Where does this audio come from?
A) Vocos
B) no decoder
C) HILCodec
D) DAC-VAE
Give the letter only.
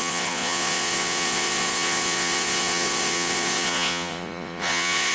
A